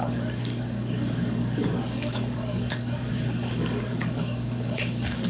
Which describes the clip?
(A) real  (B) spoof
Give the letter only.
B